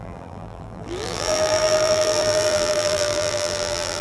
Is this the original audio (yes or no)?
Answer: no